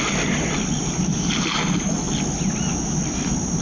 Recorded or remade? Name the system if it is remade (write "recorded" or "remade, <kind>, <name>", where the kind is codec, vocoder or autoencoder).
recorded